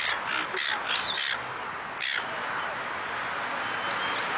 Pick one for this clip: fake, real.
real